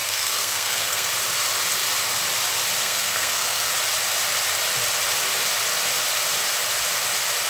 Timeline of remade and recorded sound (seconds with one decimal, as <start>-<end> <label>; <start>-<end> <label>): 0.0-1.1 remade; 1.1-2.8 recorded; 2.8-3.7 remade; 3.7-7.5 recorded